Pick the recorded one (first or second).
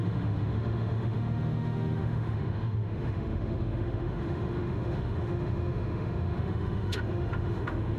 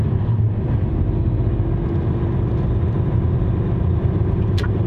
second